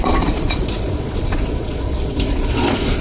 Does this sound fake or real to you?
fake